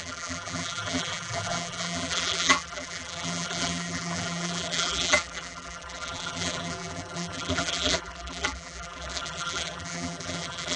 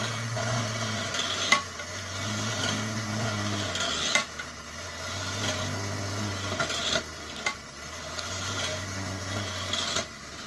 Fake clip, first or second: first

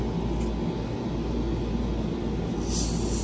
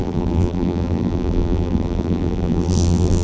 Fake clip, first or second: second